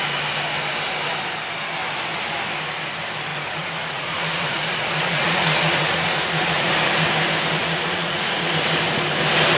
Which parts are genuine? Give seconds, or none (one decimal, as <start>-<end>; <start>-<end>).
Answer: 0.0-3.3; 6.7-7.6; 8.5-9.6